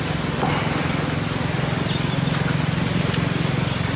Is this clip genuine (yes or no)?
yes